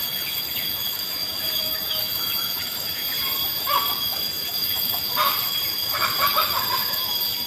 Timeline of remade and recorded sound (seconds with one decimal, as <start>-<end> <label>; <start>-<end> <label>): 0.0-3.0 remade; 3.0-3.6 recorded; 3.6-7.5 remade

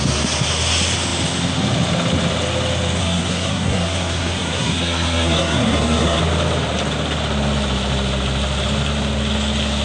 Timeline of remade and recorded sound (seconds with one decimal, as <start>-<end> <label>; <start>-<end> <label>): 0.0-3.0 recorded; 3.0-6.2 remade; 6.2-9.8 recorded

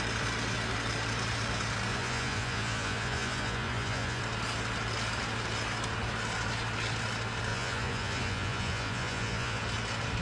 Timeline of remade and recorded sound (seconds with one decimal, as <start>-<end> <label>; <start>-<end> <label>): 0.0-1.9 recorded; 1.9-4.2 remade; 4.2-7.5 recorded; 7.5-9.6 remade; 9.6-10.2 recorded

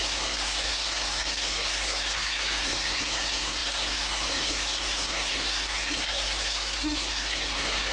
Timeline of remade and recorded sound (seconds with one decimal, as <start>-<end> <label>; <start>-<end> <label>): 0.0-7.9 remade

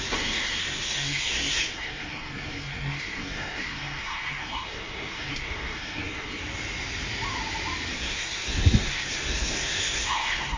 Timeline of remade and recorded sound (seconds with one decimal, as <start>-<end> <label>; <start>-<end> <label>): 0.0-6.4 remade; 6.4-7.9 recorded; 7.9-10.6 remade

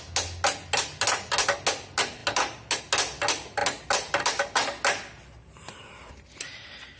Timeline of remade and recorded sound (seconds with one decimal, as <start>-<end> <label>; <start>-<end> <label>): 0.0-7.0 recorded

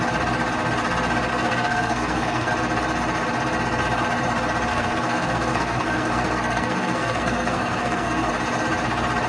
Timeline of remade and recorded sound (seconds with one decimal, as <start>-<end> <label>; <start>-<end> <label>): 0.0-1.3 recorded; 1.3-2.5 remade; 2.5-4.7 recorded; 4.7-8.3 remade; 8.3-9.3 recorded

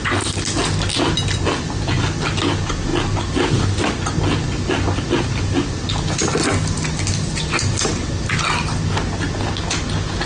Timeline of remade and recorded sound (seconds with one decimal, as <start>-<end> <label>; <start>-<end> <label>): 0.0-10.3 recorded